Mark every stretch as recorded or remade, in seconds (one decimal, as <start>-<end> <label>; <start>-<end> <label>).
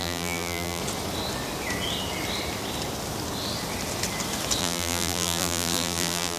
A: 0.0-0.8 remade; 0.8-4.6 recorded; 4.6-6.4 remade